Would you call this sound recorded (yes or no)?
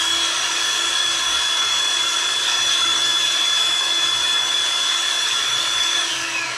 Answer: no